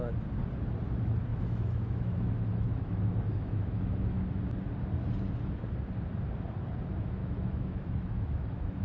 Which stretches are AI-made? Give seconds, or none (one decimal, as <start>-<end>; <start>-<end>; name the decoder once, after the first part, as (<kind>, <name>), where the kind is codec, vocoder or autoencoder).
1.3-4.3 (autoencoder, DAC-VAE); 7.2-8.8